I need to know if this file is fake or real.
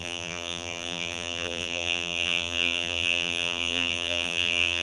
fake